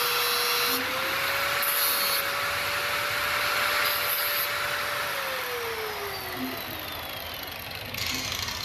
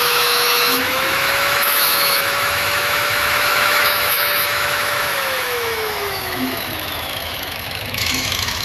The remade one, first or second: second